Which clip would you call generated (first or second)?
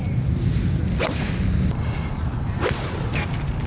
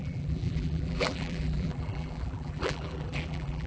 second